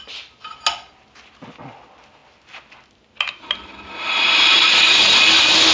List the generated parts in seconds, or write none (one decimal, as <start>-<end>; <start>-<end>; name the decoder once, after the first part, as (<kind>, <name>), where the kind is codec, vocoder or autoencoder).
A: none